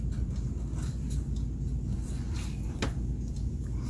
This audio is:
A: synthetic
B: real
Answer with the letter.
B